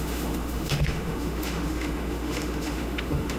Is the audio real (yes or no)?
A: no